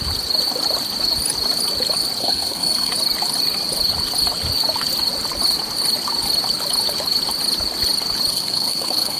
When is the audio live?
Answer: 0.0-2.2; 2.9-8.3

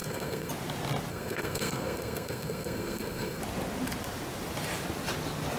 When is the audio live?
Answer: 0.5-1.1; 3.4-5.6

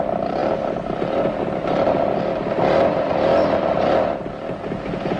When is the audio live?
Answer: 0.0-5.2

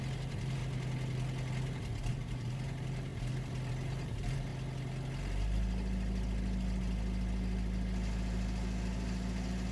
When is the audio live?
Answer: 0.6-2.1; 3.1-3.7; 4.5-9.7

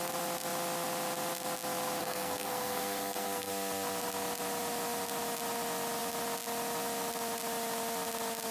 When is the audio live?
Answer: 0.0-2.0; 3.5-8.5

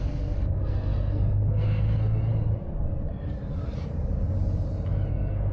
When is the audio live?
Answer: 2.3-5.1

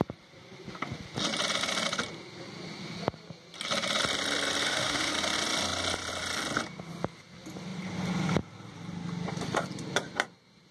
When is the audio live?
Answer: 0.0-4.6; 5.1-10.7